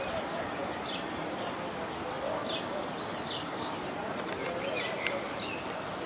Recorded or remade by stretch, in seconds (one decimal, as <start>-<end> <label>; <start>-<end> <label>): 0.0-6.1 recorded